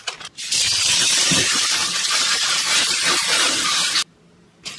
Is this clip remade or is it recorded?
remade